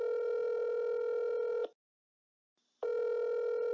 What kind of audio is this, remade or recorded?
recorded